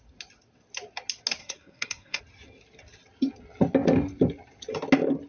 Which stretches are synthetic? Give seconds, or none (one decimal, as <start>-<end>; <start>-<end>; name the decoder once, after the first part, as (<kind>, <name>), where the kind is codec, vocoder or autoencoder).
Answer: 1.4-2.2 (codec, SNAC)